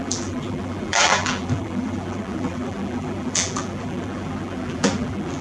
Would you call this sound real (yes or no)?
no